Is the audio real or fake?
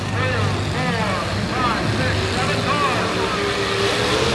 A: real